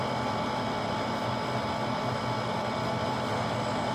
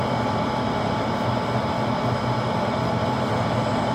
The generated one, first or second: second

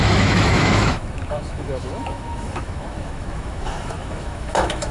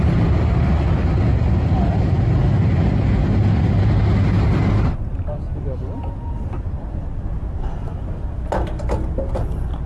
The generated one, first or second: first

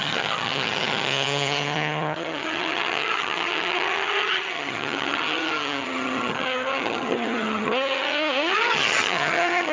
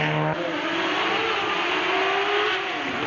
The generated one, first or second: first